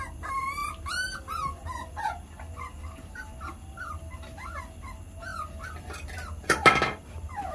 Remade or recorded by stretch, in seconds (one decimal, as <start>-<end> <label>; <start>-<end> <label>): 0.0-7.5 recorded

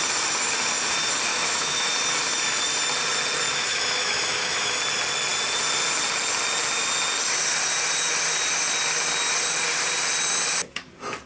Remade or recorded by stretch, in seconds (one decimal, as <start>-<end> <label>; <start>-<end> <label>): 0.0-1.3 recorded; 1.3-1.9 remade; 1.9-3.5 recorded; 3.5-4.8 remade; 4.8-11.3 recorded

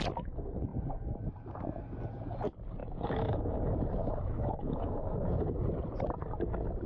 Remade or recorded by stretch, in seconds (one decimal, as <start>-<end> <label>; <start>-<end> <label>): 0.0-2.8 recorded; 2.8-5.6 remade; 5.6-6.9 recorded

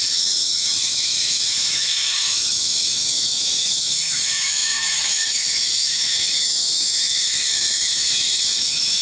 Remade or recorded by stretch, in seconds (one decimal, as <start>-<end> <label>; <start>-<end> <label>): 0.0-9.0 remade

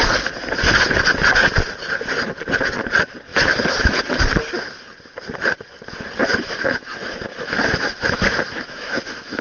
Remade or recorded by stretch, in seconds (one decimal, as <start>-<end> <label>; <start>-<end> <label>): 0.0-3.3 recorded; 3.3-4.2 remade; 4.2-6.2 recorded; 6.2-9.4 remade

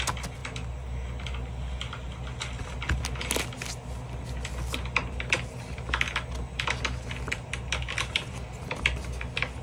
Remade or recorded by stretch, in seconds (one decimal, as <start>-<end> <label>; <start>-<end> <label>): 0.0-9.6 recorded

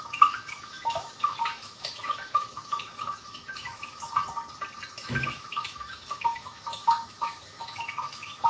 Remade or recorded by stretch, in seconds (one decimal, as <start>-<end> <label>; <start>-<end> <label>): 0.0-4.1 remade; 4.1-4.9 recorded; 4.9-8.5 remade

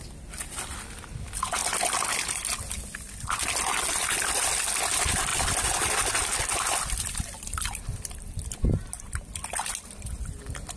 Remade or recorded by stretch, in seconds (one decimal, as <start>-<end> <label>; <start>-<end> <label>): 0.0-10.8 recorded